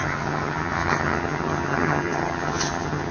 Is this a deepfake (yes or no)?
yes